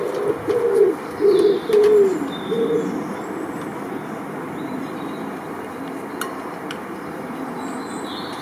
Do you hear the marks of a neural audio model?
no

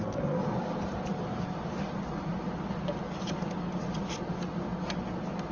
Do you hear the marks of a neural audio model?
no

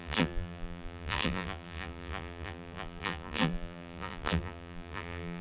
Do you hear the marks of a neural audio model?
yes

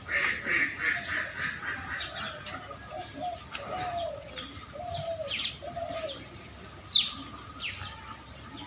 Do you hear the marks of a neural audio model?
no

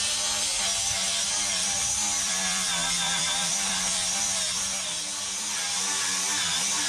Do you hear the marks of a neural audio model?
yes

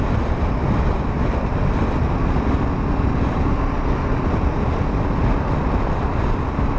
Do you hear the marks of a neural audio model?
no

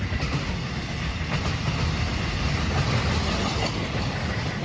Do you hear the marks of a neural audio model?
no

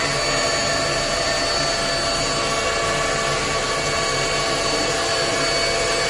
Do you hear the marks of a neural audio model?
no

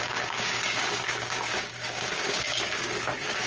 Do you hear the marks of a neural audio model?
yes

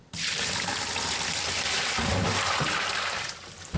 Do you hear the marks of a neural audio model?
yes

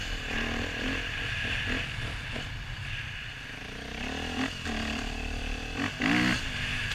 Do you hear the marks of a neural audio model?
no